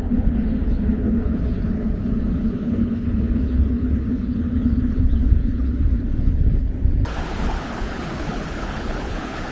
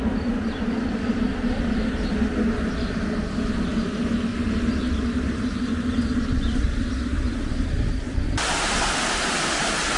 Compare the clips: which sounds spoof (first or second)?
first